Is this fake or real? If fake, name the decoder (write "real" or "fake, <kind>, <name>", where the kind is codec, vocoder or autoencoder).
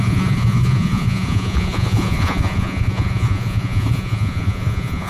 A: fake, vocoder, Vocos